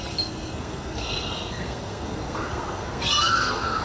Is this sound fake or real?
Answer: fake